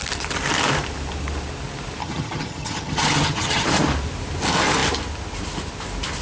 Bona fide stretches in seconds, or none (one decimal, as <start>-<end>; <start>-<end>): 0.0-2.0; 3.7-6.2